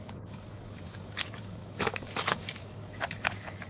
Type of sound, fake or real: fake